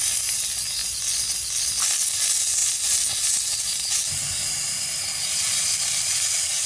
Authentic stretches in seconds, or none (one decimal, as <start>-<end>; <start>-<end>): 0.0-6.7